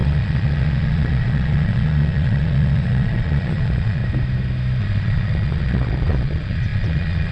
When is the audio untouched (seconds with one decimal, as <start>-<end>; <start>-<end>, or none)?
4.0-4.8